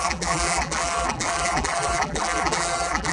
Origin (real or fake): fake